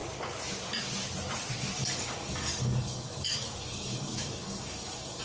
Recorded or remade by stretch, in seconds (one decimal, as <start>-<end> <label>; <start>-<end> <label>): 0.0-1.8 recorded; 1.8-5.2 remade